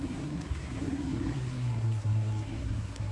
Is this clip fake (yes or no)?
yes